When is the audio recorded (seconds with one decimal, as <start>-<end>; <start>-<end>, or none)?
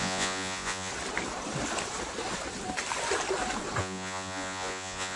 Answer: 0.9-3.8